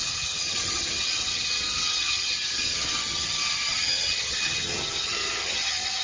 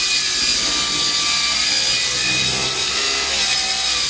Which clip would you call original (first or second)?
second